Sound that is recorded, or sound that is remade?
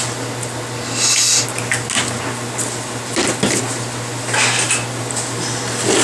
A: recorded